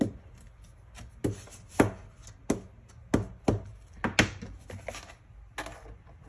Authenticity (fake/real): real